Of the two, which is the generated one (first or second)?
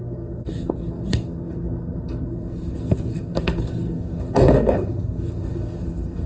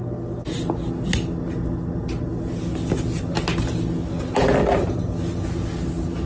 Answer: first